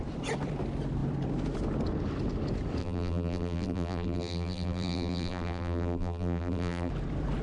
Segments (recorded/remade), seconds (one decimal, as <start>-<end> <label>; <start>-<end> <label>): 0.0-2.8 recorded; 2.8-6.9 remade; 6.9-7.4 recorded